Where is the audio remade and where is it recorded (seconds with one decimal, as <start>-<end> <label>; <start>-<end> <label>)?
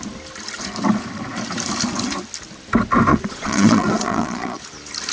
0.0-3.1 recorded; 3.1-4.6 remade; 4.6-5.1 recorded